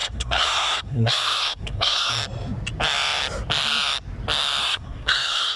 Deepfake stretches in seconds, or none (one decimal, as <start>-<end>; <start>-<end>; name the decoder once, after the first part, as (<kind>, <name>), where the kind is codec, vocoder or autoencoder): 0.0-2.1 (codec, SNAC); 4.6-5.6